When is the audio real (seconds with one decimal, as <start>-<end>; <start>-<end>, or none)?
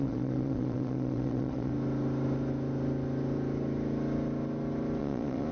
1.7-5.0